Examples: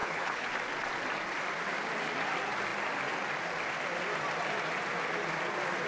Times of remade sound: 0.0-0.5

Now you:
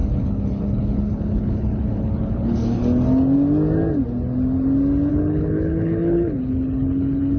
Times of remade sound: 0.0-2.8; 5.1-7.4

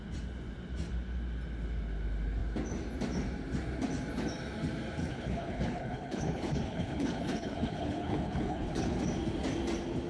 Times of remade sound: 5.0-9.0

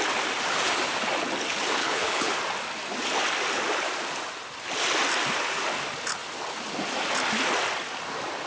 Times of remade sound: 1.8-2.3

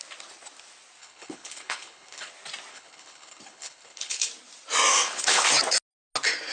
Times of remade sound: 1.0-2.3; 2.7-4.3; 4.9-5.5

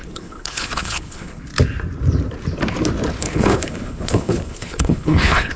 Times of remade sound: 0.0-1.5; 3.2-5.6